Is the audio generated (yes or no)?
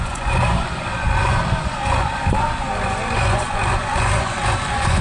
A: yes